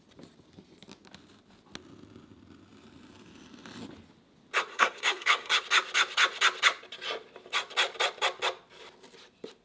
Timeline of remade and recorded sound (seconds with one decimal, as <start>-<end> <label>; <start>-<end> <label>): 0.0-4.7 recorded; 4.7-5.6 remade; 5.6-9.6 recorded